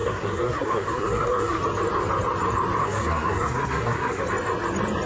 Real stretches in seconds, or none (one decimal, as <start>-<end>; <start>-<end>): 1.6-2.8; 4.2-5.1